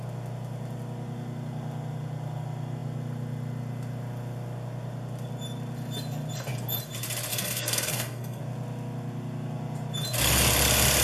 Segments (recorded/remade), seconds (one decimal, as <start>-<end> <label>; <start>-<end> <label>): 0.0-7.3 recorded; 7.3-8.4 remade; 8.4-11.0 recorded